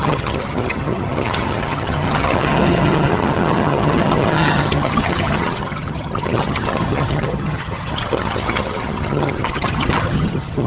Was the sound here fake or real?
fake